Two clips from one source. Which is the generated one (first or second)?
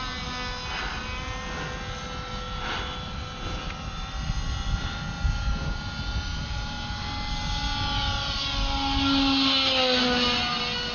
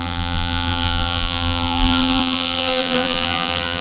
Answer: second